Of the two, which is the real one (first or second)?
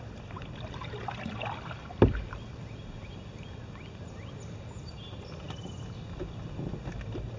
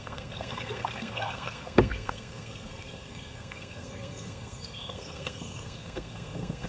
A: first